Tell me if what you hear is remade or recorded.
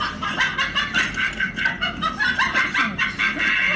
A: recorded